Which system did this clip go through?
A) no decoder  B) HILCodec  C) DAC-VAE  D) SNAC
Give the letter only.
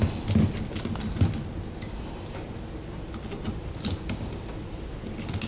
A